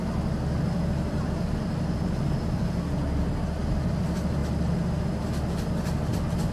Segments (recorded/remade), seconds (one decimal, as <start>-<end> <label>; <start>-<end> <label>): 0.0-6.5 recorded